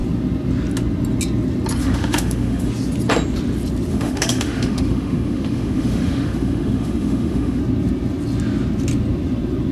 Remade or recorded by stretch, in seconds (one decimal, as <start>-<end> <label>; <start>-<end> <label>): 0.0-1.8 recorded; 1.8-2.7 remade; 2.7-3.9 recorded; 3.9-7.6 remade; 7.6-9.7 recorded